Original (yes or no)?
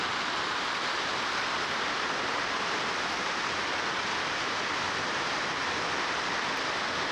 yes